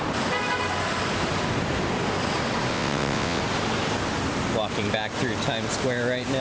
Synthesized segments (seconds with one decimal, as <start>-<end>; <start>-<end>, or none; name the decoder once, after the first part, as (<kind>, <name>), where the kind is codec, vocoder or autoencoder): 2.7-3.4 (vocoder, WaveNeXt)